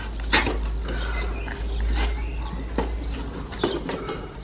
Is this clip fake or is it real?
real